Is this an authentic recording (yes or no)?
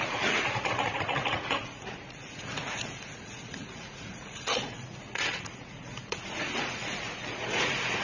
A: no